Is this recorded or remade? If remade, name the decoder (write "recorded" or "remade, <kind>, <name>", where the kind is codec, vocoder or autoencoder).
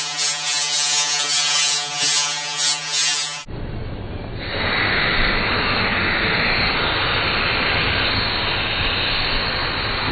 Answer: recorded